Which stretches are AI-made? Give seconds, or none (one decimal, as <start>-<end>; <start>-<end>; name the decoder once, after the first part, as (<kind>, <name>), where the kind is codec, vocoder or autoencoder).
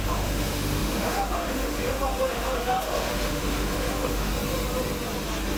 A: 0.0-4.3 (autoencoder, DAC-VAE)